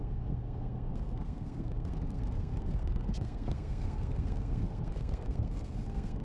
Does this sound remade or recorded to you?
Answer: remade